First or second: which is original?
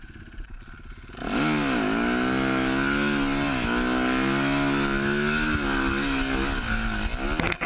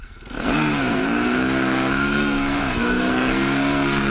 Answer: first